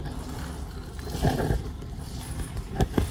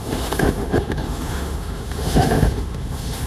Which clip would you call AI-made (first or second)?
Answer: second